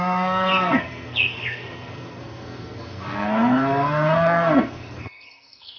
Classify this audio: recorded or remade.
remade